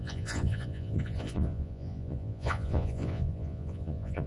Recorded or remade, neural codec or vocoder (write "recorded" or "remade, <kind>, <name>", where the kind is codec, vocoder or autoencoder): remade, vocoder, Vocos